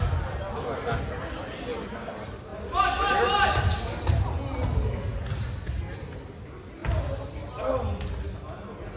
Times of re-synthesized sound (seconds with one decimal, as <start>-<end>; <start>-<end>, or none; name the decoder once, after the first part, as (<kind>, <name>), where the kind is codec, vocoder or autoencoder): none